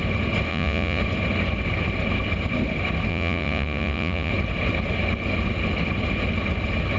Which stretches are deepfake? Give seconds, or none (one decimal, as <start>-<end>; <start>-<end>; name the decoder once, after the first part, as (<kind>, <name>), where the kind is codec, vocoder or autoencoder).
0.5-1.0 (vocoder, Vocos); 3.1-4.3